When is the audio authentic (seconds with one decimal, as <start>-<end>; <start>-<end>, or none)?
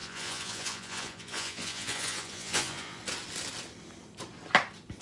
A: 3.0-5.0